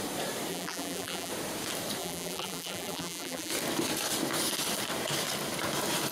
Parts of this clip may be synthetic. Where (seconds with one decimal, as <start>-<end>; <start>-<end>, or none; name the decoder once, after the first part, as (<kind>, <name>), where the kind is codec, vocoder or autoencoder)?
0.5-1.3 (vocoder, BigVGAN v2); 2.0-3.5